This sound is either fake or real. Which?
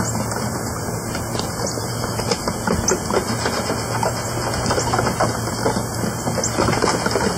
real